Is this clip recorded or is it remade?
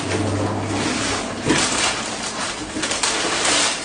recorded